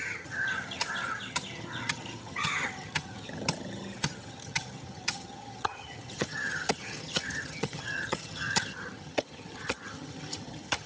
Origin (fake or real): fake